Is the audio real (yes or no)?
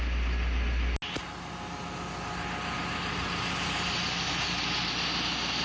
yes